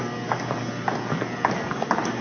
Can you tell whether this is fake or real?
real